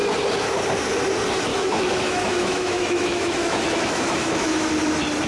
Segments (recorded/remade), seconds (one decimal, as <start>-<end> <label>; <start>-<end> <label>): 0.0-1.5 recorded; 1.5-4.7 remade; 4.7-5.3 recorded